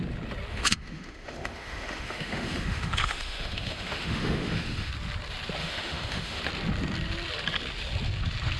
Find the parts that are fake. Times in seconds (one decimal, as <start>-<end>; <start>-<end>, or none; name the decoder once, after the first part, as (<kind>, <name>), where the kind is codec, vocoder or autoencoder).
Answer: 0.5-4.9 (autoencoder, DAC-VAE); 5.6-6.4